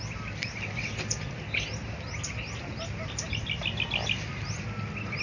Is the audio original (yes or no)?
yes